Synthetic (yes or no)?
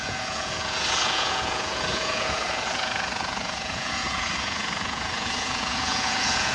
yes